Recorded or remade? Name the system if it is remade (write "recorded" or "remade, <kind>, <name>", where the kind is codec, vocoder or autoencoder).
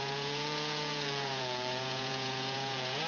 remade, vocoder, Vocos